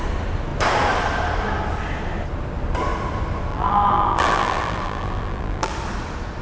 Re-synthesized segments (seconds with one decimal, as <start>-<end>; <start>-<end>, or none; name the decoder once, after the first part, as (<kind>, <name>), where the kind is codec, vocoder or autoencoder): 3.5-5.7 (vocoder, BigVGAN v2)